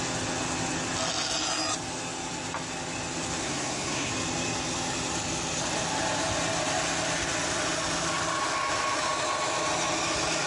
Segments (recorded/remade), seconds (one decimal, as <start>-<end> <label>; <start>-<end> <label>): 0.0-3.4 recorded; 3.4-4.1 remade; 4.1-10.5 recorded